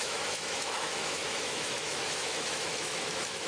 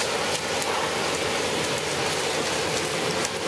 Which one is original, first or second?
second